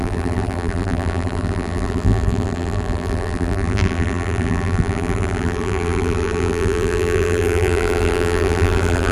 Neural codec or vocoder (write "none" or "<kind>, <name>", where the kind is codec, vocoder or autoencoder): vocoder, BigVGAN v2